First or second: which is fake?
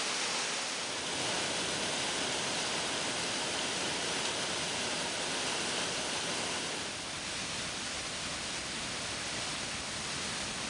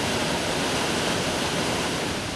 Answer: second